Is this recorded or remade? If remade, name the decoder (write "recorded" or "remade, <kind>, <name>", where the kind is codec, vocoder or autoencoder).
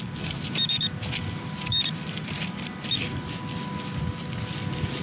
recorded